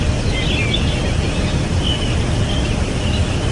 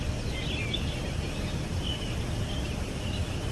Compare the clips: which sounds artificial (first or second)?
second